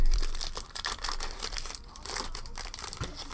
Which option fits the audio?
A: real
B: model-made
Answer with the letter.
B